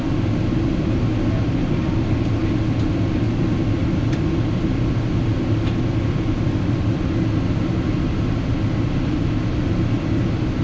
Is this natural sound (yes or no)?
yes